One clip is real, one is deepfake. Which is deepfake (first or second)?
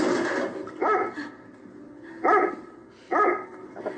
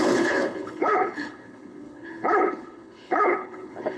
second